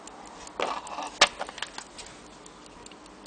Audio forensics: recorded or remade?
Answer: recorded